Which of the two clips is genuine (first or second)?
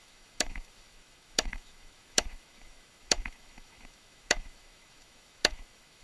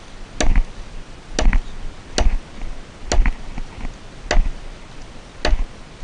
second